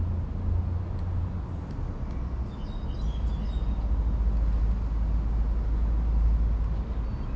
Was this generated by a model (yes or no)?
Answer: no